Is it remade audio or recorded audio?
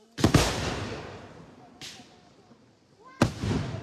recorded